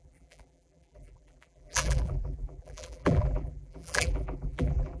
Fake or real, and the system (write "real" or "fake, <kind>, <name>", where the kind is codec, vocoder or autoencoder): fake, vocoder, BigVGAN v2